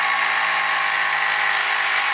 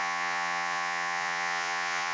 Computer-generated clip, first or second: second